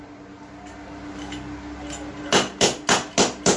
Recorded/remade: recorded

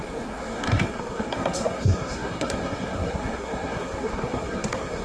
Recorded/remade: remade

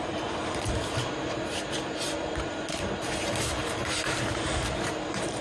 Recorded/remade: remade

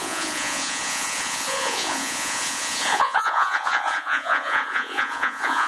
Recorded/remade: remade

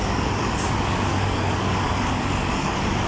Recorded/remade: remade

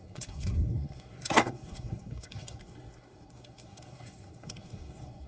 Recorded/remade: remade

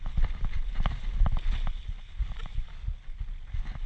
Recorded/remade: recorded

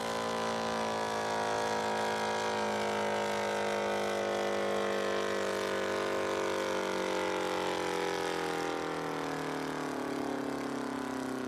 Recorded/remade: recorded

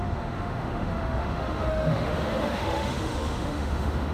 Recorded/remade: remade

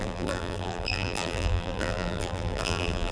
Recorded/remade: remade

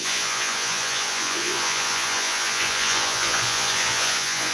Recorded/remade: remade